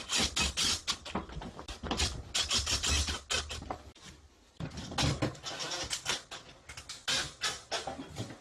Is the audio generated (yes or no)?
no